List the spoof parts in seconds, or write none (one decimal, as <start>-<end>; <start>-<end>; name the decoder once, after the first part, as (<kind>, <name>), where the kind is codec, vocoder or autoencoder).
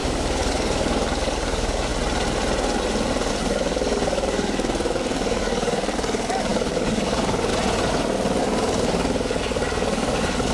0.0-1.9 (codec, DAC); 3.3-7.5; 8.4-10.5